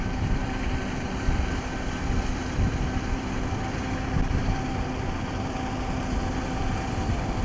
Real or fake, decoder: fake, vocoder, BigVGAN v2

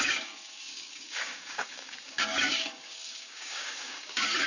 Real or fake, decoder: fake, codec, DAC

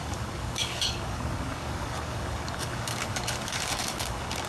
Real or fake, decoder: fake, codec, DAC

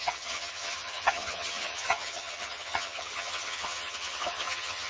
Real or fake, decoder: fake, vocoder, HiFi-GAN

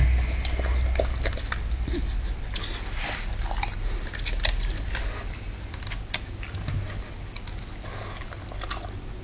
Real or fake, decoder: real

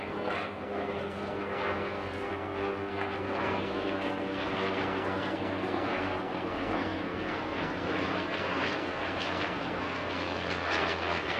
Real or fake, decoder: fake, codec, SNAC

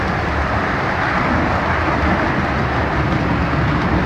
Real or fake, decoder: real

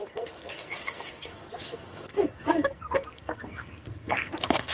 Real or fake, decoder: fake, codec, SNAC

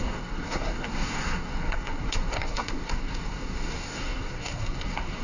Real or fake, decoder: fake, codec, SNAC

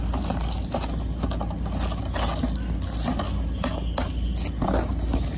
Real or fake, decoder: real